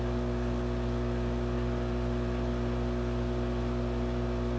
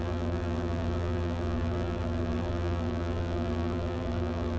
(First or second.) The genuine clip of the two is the first